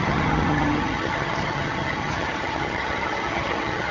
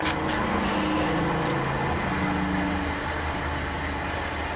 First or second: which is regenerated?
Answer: first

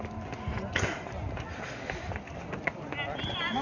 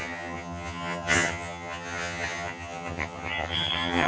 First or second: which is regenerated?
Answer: second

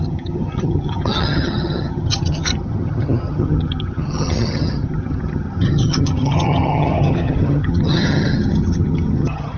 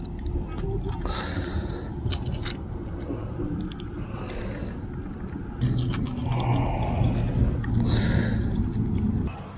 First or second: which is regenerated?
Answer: first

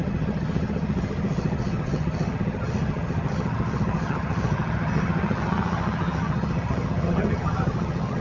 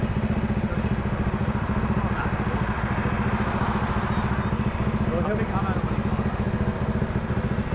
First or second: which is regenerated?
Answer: first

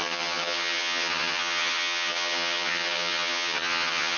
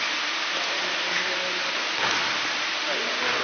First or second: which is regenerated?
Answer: first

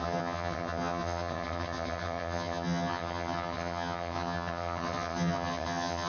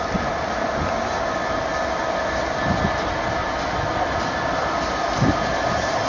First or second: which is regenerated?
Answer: first